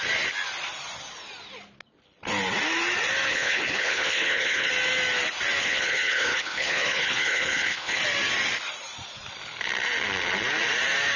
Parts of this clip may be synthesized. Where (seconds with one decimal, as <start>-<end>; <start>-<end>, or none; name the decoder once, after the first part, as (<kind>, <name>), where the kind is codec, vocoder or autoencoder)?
3.3-4.7 (codec, HILCodec); 5.6-8.0